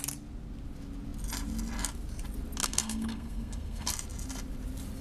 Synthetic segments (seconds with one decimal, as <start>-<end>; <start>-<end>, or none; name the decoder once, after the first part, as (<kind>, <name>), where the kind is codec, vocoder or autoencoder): 2.6-3.9 (codec, SNAC)